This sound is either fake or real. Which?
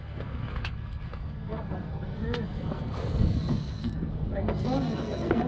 fake